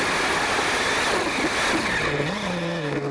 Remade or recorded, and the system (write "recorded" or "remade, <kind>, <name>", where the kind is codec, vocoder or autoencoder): recorded